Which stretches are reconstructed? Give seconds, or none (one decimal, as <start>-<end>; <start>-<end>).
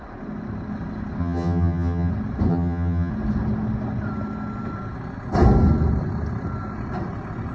1.2-2.1; 2.5-3.1